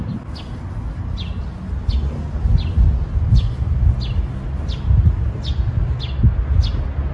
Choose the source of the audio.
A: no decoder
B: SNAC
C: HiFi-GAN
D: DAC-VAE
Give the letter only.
A